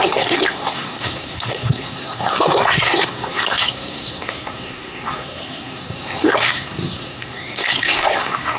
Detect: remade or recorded remade